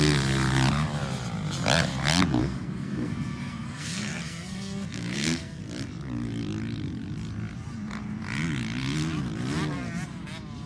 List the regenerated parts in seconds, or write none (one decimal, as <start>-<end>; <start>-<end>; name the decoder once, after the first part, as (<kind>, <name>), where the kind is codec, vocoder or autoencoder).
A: 2.4-5.6 (codec, SNAC)